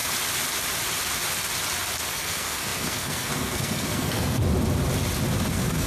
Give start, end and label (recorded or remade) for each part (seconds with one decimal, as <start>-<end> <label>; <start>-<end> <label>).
0.0-2.1 recorded; 2.1-4.4 remade; 4.4-5.5 recorded; 5.5-5.9 remade